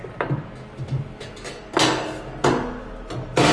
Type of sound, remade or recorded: recorded